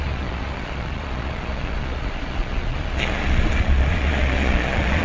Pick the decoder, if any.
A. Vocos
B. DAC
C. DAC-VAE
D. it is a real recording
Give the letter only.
A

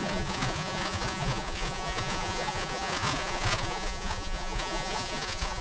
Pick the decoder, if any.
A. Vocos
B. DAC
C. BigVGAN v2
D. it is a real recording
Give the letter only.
A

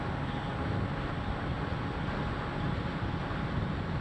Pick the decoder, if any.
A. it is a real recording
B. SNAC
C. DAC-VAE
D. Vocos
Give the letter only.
A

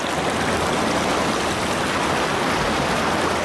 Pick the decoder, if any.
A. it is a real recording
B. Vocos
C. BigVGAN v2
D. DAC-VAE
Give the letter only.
A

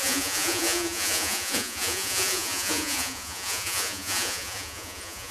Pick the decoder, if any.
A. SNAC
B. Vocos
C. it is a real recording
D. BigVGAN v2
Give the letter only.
B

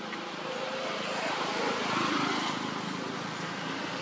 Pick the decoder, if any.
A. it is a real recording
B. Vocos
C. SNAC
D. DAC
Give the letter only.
A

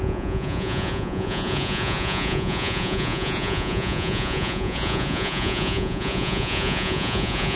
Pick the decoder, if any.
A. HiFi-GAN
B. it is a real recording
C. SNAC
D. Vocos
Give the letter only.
D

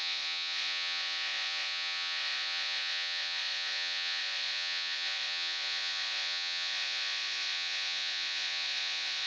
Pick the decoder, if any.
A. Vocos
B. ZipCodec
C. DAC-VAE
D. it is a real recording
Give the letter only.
A